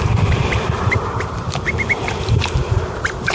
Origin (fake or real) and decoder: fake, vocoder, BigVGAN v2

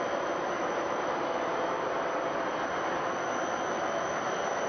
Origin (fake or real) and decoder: real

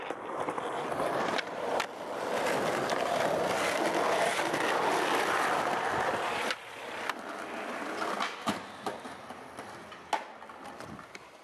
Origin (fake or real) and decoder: real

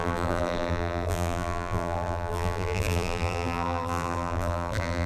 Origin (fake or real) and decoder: fake, vocoder, BigVGAN v2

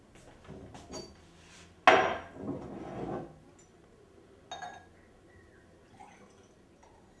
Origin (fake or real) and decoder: real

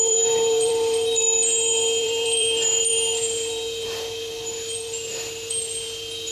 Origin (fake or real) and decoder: fake, vocoder, BigVGAN v2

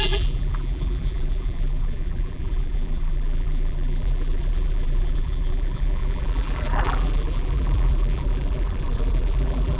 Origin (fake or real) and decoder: fake, vocoder, BigVGAN v2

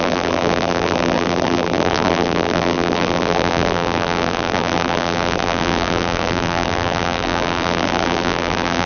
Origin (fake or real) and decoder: fake, vocoder, BigVGAN v2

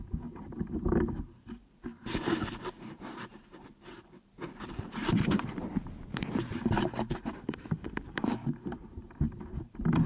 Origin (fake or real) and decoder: fake, vocoder, BigVGAN v2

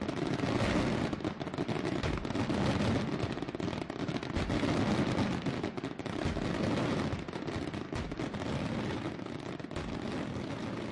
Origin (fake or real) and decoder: real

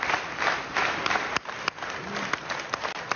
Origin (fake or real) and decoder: real